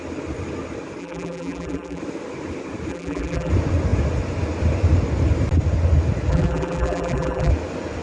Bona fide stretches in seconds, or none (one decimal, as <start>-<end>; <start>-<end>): 0.0-1.0; 2.0-2.9; 3.5-6.3; 7.5-8.0